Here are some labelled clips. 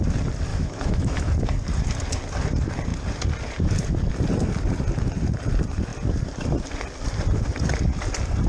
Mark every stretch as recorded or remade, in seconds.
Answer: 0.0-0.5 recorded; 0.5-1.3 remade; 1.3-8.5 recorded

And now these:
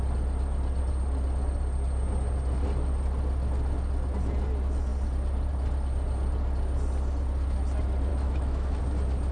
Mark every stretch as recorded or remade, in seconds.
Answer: 0.0-8.1 recorded; 8.1-8.8 remade; 8.8-9.3 recorded

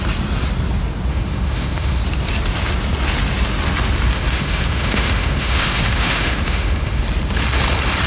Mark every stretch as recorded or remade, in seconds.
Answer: 0.0-1.1 recorded; 1.1-2.0 remade; 2.0-4.1 recorded; 4.1-7.0 remade; 7.0-8.1 recorded